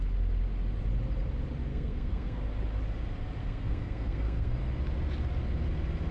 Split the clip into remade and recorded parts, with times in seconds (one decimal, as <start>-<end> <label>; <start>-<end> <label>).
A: 0.0-1.7 recorded; 1.7-2.4 remade; 2.4-3.4 recorded; 3.4-4.5 remade; 4.5-6.1 recorded